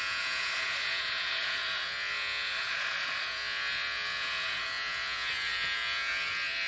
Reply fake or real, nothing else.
fake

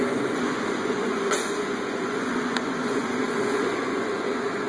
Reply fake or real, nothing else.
fake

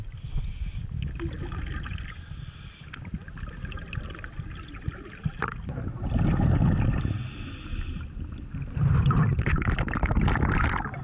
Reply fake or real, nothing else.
real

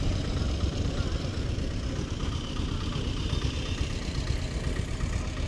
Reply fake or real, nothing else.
real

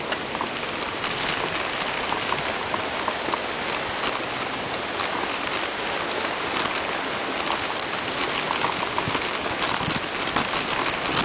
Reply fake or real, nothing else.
real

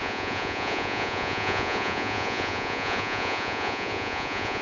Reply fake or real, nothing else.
fake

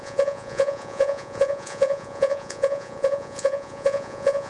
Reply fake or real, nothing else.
fake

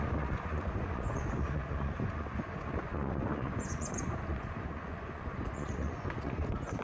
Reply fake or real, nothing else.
fake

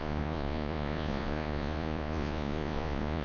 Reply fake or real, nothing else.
fake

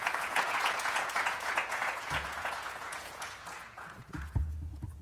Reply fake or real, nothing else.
fake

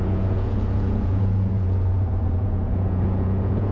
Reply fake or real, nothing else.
fake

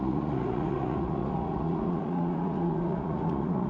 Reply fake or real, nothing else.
fake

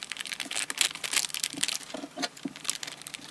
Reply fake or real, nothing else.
real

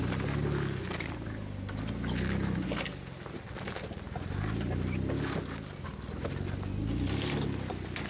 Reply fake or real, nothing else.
real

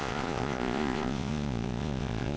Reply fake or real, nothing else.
fake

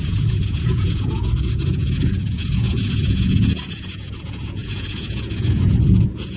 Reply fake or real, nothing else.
fake